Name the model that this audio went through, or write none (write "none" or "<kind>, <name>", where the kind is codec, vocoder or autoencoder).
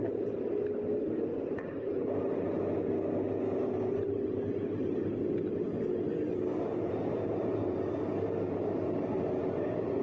none